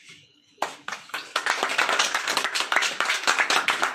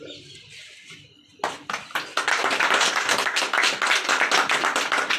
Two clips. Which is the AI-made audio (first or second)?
first